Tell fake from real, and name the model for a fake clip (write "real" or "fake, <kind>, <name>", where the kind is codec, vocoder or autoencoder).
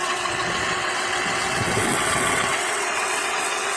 fake, vocoder, WaveNeXt